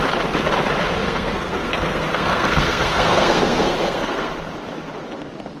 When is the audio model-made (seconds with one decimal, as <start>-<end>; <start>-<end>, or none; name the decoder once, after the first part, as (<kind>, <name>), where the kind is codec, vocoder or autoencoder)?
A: 1.0-4.3 (codec, SNAC)